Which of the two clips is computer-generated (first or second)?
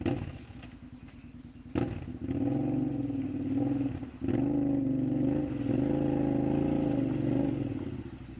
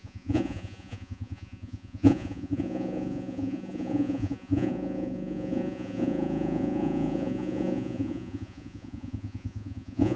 second